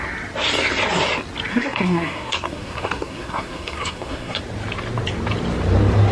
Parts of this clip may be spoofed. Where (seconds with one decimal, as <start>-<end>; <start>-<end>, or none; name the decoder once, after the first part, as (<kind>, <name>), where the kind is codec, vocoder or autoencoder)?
1.5-4.4 (codec, SNAC)